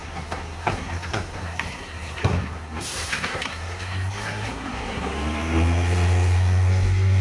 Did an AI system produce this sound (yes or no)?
yes